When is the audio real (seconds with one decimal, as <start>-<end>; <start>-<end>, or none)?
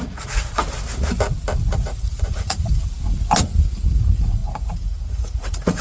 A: 0.6-1.7; 2.8-3.9